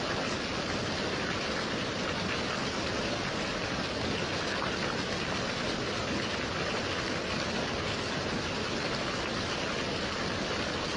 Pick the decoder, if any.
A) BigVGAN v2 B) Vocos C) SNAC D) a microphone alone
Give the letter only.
D